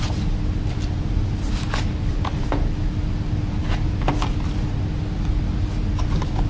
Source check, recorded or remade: recorded